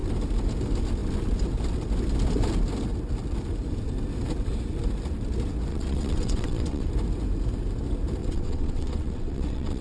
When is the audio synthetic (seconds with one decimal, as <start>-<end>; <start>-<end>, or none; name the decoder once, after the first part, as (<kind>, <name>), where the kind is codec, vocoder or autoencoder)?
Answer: 5.7-6.9 (vocoder, WaveNeXt); 8.2-9.8